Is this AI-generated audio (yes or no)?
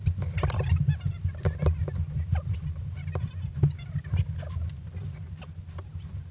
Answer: no